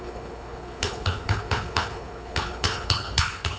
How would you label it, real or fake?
fake